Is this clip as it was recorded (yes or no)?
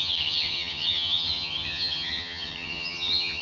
no